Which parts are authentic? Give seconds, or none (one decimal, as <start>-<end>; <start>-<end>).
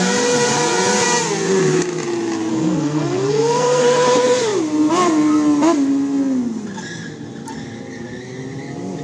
0.0-2.5; 3.8-9.0